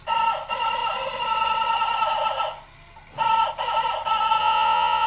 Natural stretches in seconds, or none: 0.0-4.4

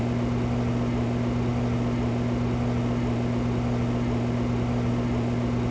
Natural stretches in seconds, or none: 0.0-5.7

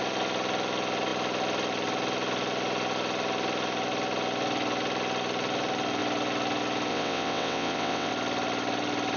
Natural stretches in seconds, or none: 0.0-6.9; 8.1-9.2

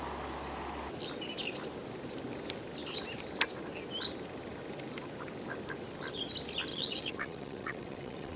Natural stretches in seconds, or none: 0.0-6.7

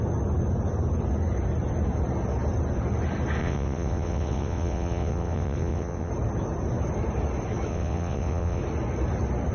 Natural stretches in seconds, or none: 0.0-3.4; 6.1-7.7; 8.6-9.5